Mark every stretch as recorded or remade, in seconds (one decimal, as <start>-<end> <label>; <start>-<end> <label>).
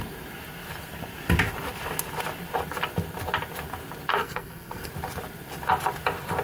0.0-4.1 recorded; 4.1-4.9 remade; 4.9-6.4 recorded